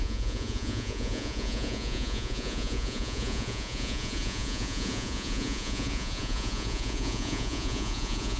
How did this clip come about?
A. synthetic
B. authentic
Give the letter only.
A